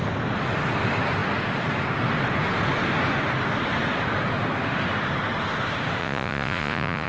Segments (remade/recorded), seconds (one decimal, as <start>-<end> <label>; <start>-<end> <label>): 0.0-6.0 recorded; 6.0-7.1 remade